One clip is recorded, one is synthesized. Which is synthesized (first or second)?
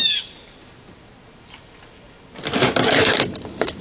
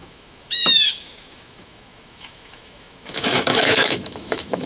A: second